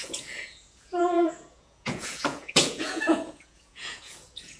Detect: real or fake fake